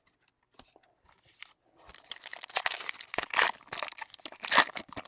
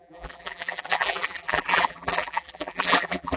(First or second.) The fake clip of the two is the second